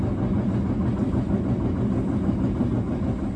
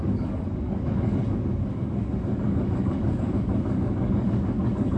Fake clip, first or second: second